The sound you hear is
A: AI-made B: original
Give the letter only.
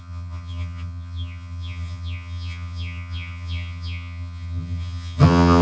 A